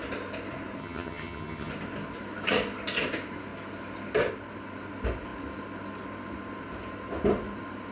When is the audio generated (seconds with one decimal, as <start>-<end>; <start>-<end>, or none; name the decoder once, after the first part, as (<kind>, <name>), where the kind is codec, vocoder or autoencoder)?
0.8-1.7 (vocoder, HiFi-GAN)